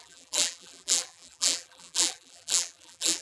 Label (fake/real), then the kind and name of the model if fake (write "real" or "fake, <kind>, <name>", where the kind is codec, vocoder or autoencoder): fake, vocoder, BigVGAN v2